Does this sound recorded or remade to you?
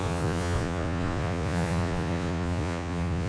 remade